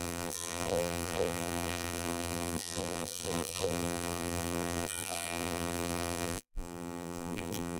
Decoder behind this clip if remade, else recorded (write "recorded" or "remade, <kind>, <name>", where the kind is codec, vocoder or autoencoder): remade, vocoder, BigVGAN v2